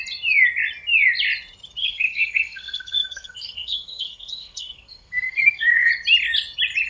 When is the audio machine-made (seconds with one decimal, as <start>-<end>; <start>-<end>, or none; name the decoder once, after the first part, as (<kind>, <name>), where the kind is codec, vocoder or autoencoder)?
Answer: 1.8-5.9 (codec, SNAC)